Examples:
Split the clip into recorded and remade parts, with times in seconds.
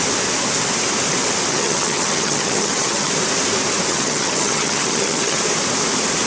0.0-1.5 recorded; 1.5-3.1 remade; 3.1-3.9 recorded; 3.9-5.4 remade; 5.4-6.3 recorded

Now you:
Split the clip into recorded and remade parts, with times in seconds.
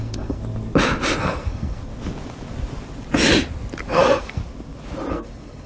0.0-0.4 remade; 0.4-1.2 recorded; 1.2-1.8 remade; 1.8-3.9 recorded; 3.9-4.4 remade; 4.4-5.1 recorded; 5.1-5.7 remade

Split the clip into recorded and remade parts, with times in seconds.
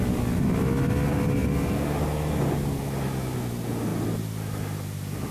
0.0-5.3 recorded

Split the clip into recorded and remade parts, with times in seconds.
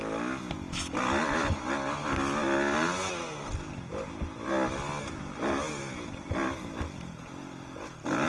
0.0-8.3 recorded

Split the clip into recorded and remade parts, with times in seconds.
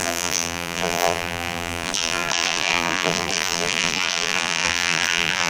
0.0-5.5 remade